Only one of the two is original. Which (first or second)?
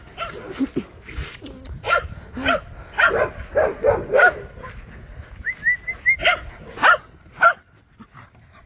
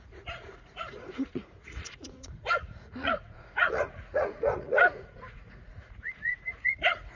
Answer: first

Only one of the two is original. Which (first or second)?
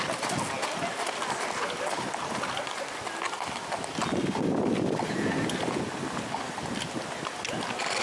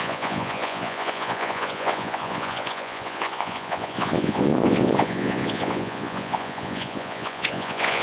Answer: first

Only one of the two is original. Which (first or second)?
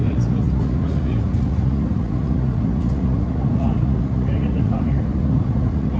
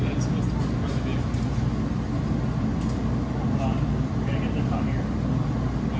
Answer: second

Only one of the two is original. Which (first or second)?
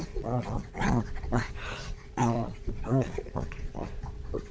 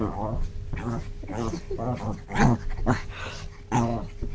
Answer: second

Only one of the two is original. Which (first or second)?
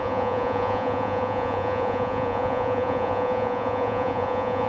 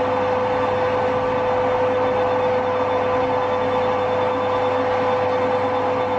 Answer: second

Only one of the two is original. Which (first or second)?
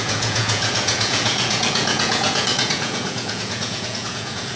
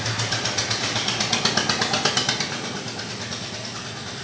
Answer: second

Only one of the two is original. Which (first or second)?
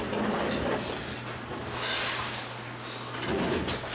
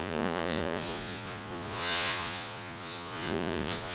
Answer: first